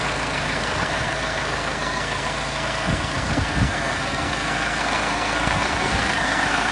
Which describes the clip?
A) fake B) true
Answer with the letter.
A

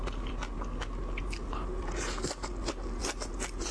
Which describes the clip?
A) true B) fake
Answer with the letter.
A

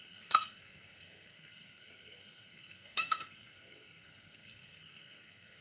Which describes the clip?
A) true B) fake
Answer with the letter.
B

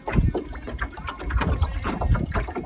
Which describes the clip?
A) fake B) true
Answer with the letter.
B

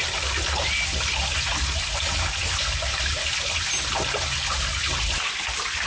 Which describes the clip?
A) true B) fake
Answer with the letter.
A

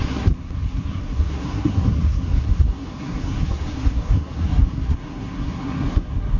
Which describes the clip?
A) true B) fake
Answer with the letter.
B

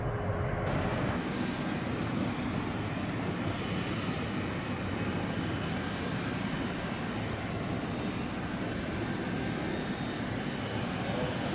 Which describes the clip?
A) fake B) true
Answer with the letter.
B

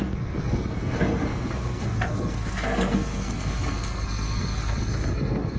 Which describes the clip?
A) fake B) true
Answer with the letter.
A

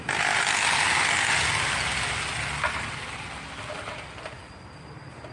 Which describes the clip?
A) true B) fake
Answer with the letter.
A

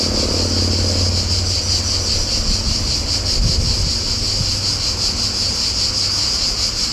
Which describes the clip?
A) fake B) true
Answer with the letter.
B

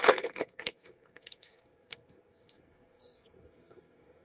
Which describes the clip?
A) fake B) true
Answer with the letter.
A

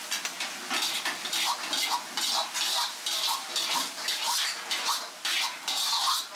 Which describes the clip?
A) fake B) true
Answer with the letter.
B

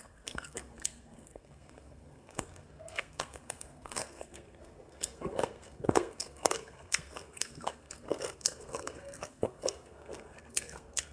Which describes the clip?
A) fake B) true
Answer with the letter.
A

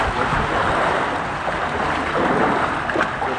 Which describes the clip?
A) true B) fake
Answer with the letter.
A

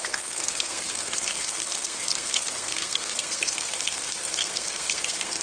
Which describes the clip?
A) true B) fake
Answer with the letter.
B